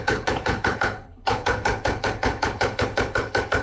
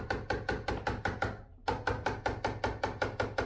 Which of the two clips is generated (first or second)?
first